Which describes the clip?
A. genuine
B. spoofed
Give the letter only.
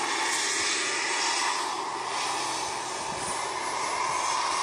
A